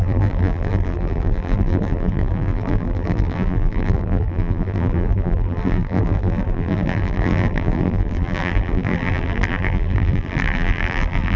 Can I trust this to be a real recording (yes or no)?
no